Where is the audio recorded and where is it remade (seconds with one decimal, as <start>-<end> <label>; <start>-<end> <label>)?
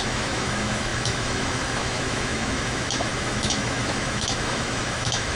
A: 0.0-5.4 remade